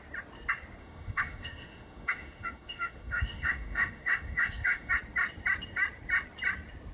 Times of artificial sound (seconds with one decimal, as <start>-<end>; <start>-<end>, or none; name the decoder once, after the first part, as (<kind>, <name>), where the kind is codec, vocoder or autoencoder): 0.8-4.9 (autoencoder, DAC-VAE)